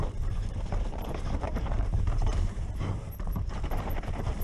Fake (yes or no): yes